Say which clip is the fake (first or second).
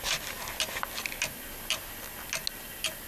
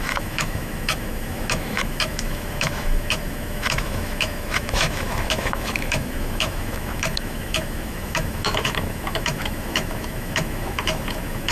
second